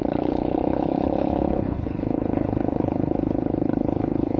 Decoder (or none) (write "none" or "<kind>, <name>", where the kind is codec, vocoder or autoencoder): codec, HILCodec